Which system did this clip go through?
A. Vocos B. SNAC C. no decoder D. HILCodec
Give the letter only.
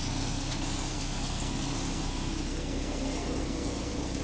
B